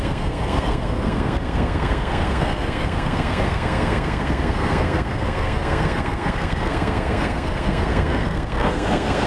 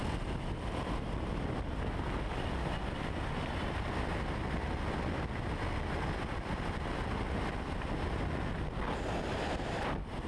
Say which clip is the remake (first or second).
first